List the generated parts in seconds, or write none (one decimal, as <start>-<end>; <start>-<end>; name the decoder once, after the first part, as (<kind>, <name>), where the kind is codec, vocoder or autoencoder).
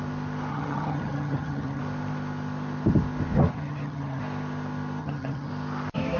0.5-1.8 (vocoder, HiFi-GAN); 3.5-4.2; 5.0-5.5